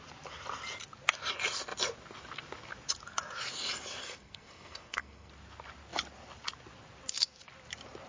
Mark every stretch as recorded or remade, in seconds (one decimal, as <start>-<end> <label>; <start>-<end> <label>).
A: 0.0-4.0 recorded; 4.0-5.3 remade; 5.3-8.1 recorded